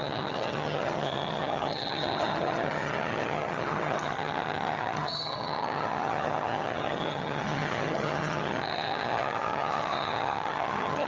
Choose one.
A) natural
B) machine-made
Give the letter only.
B